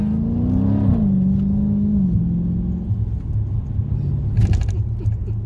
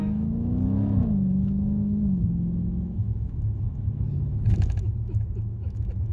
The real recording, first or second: first